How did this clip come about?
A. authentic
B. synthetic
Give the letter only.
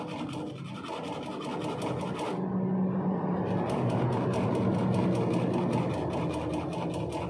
A